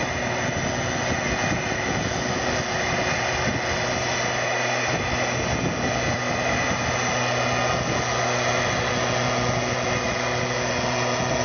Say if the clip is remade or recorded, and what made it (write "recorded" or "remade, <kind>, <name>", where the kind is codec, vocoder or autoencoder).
recorded